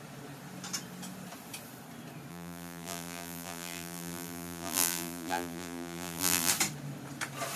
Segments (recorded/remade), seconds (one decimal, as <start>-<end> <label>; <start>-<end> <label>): 0.0-2.3 recorded; 2.3-6.5 remade; 6.5-7.6 recorded